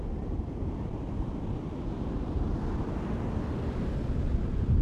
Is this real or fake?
real